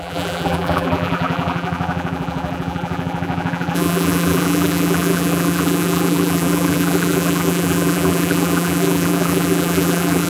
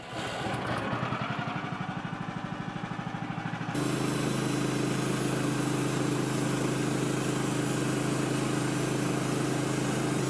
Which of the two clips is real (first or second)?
second